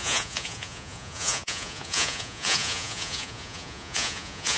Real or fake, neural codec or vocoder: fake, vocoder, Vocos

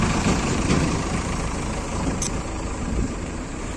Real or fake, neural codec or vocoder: fake, vocoder, BigVGAN v2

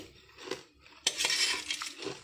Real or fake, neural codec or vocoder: real